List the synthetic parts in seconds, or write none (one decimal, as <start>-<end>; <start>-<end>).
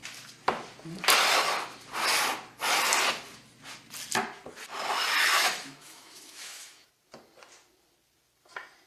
5.3-6.9